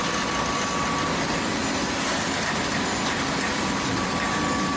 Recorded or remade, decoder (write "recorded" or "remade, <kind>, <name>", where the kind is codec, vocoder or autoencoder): recorded